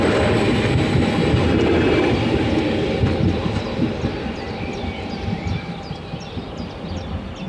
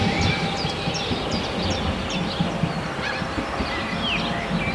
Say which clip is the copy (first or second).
first